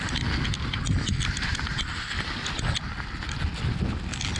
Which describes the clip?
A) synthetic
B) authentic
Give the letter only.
B